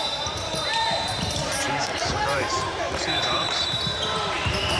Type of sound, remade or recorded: remade